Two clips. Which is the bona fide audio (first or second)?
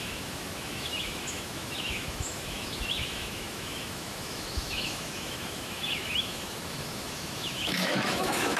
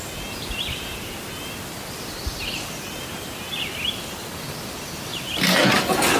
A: second